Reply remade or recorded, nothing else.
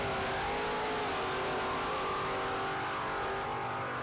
recorded